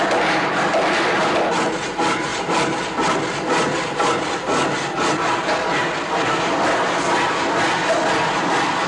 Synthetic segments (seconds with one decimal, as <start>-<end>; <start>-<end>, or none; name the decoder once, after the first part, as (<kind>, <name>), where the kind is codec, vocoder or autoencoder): none